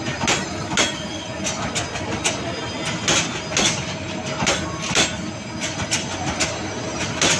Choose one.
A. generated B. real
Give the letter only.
B